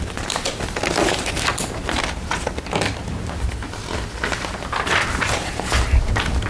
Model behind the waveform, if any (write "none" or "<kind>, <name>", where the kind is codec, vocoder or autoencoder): none